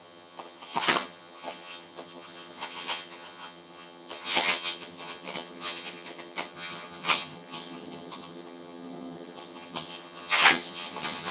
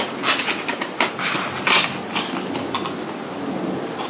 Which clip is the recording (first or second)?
second